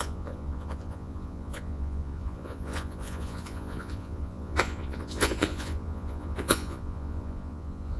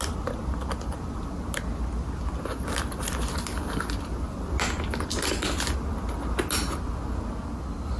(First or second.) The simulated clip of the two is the first